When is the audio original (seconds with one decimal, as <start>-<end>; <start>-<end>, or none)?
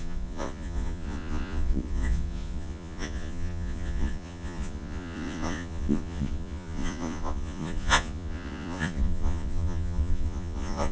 none